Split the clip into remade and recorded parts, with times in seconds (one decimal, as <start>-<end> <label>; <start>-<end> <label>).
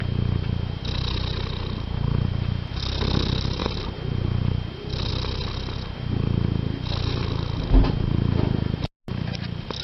0.0-9.8 recorded